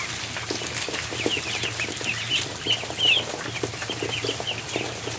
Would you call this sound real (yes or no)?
yes